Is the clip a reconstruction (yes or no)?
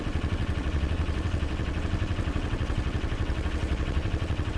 yes